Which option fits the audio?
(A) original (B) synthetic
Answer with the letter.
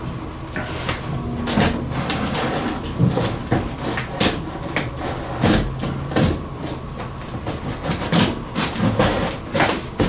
A